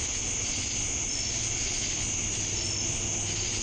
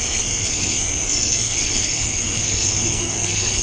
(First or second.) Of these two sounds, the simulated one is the second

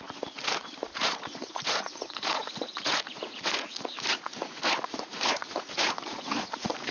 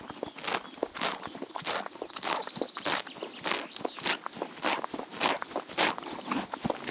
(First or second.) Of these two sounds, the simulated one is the first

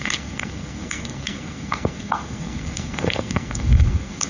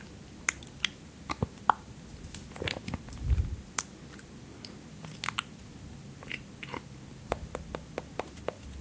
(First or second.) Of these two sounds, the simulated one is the first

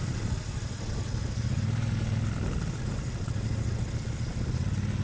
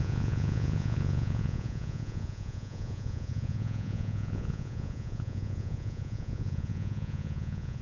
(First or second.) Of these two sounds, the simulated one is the second